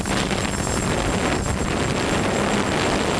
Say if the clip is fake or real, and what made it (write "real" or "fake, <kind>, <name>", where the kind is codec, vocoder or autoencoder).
real